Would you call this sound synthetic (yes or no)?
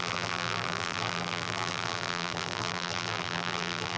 yes